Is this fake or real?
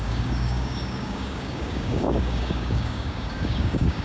fake